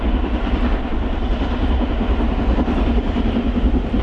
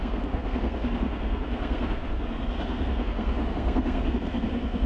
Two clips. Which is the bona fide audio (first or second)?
first